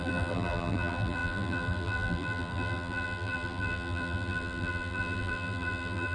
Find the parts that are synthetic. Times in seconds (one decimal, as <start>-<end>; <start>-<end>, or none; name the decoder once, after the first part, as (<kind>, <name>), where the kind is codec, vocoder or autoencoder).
0.0-6.1 (vocoder, BigVGAN v2)

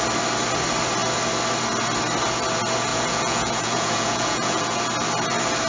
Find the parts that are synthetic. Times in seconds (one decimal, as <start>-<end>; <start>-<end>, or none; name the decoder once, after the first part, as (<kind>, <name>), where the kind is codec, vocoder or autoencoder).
2.9-4.8 (vocoder, Vocos)

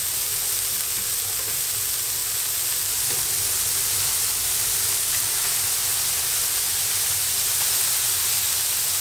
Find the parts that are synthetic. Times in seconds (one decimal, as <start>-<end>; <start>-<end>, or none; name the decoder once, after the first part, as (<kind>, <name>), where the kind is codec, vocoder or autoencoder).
5.8-7.3 (vocoder, BigVGAN v2)

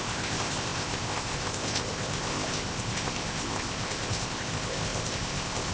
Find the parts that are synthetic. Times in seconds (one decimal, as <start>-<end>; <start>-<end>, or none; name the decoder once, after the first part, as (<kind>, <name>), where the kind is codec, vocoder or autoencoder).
0.0-5.7 (codec, ZipCodec)

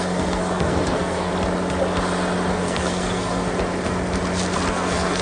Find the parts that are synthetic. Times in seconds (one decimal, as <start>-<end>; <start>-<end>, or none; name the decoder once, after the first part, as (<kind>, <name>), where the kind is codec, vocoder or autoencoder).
0.0-1.3 (codec, SNAC); 2.5-3.5; 4.7-5.2

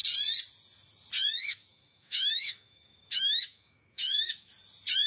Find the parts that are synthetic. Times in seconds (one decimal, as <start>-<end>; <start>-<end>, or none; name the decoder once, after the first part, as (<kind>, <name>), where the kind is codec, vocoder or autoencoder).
1.4-4.5 (autoencoder, DAC-VAE)